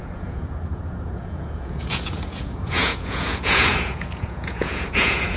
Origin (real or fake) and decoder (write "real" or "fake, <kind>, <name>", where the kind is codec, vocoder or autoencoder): fake, vocoder, Vocos